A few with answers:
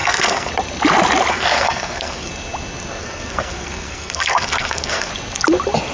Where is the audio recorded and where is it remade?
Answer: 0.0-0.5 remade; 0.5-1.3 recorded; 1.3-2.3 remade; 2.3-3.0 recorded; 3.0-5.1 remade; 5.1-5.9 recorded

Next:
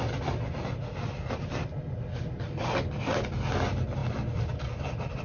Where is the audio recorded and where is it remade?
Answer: 0.0-5.2 recorded

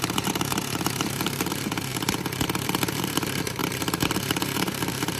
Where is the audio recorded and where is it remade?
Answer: 0.0-1.9 remade; 1.9-3.0 recorded; 3.0-5.2 remade

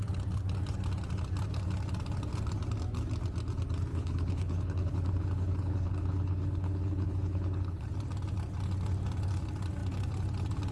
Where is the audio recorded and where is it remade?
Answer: 0.0-3.9 recorded; 3.9-7.9 remade; 7.9-10.7 recorded

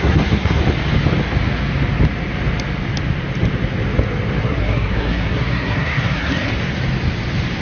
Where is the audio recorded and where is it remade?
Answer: 0.0-0.6 remade; 0.6-4.4 recorded; 4.4-6.5 remade; 6.5-7.6 recorded

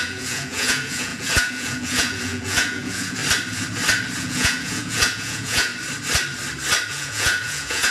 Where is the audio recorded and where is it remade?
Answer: 0.0-3.2 remade; 3.2-4.2 recorded; 4.2-5.7 remade; 5.7-6.9 recorded; 6.9-7.9 remade

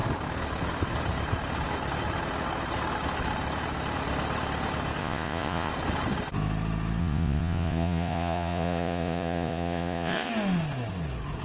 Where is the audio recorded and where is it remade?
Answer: 0.0-5.0 recorded; 5.0-5.7 remade; 5.7-7.0 recorded; 7.0-10.3 remade; 10.3-11.4 recorded